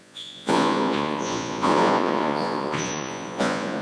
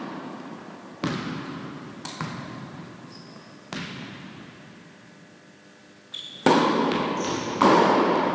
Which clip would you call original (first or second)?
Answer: second